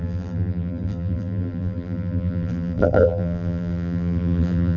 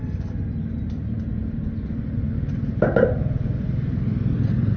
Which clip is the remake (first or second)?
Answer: first